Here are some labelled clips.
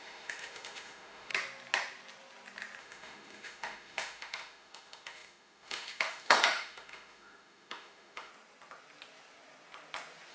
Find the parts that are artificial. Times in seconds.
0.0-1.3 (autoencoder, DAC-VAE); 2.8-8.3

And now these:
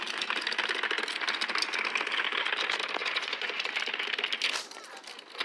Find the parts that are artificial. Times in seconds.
3.0-3.7 (vocoder, Vocos)

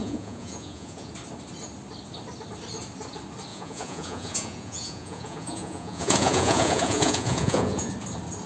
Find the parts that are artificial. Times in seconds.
0.0-1.1 (vocoder, Vocos); 3.5-7.9

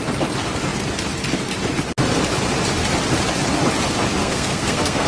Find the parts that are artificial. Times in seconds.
4.2-5.1 (codec, SNAC)

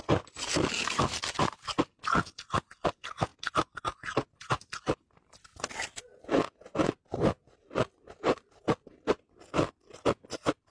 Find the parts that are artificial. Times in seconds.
none

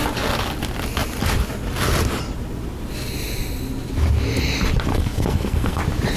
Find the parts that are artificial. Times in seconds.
4.9-5.8 (codec, SNAC)

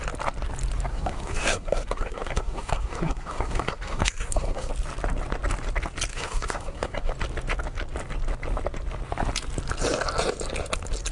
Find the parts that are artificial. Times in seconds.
0.9-4.7 (codec, SNAC); 6.1-7.1